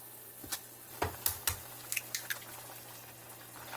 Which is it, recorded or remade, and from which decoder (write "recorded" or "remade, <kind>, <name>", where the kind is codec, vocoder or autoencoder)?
recorded